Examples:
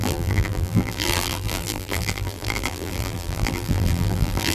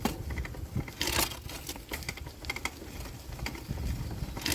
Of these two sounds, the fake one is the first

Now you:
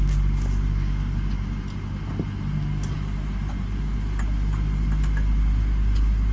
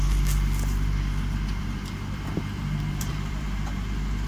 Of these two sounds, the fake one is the second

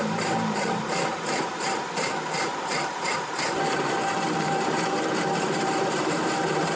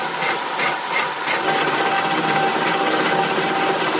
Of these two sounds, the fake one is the first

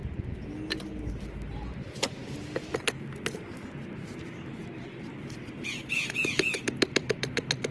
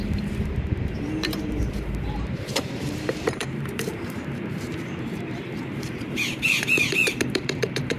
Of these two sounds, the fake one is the second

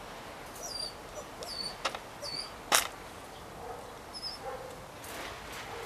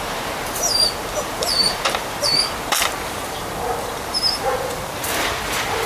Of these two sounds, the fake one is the second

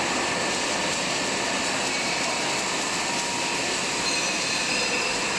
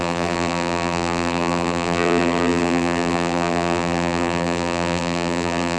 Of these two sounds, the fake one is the second